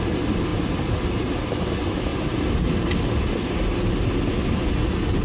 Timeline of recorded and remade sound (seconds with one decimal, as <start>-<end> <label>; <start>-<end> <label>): 0.0-5.2 recorded